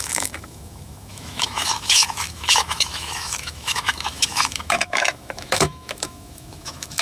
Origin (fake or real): fake